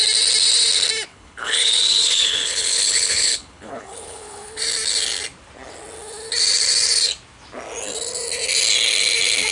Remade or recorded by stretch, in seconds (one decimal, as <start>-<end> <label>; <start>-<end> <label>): 0.0-1.1 recorded; 1.1-4.6 remade; 4.6-9.5 recorded